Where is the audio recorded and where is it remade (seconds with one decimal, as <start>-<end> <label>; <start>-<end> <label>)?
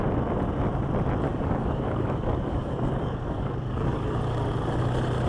0.0-1.3 recorded; 1.3-4.2 remade; 4.2-5.3 recorded